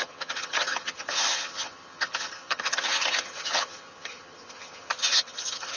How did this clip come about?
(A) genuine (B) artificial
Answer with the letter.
B